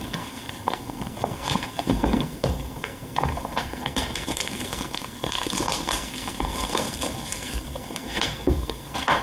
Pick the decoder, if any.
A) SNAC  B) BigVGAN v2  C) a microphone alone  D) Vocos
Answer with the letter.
A